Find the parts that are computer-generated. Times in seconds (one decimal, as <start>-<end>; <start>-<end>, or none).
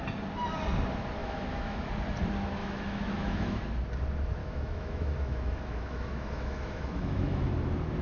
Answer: 1.2-1.9; 2.6-3.6; 4.4-7.5